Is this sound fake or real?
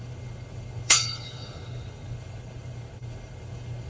fake